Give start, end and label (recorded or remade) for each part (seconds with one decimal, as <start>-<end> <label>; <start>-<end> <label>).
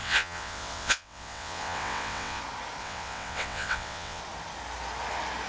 0.0-2.4 remade; 2.4-2.8 recorded; 2.8-4.2 remade; 4.2-5.5 recorded